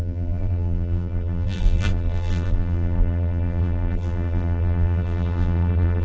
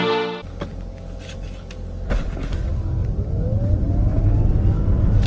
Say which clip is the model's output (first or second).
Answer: first